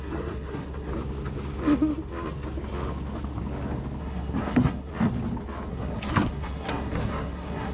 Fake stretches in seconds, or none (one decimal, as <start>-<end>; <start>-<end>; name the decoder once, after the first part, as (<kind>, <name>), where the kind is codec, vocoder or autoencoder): 0.0-0.9 (codec, SNAC); 4.0-4.9; 5.7-7.7